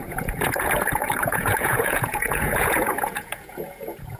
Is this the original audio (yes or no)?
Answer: no